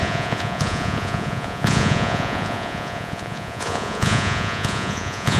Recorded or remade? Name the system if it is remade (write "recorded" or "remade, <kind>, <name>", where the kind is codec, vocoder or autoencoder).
remade, vocoder, Vocos